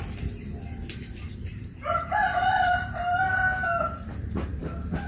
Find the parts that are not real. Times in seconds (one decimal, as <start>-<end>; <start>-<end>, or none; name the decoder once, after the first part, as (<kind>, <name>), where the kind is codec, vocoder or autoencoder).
1.4-4.5 (vocoder, BigVGAN v2)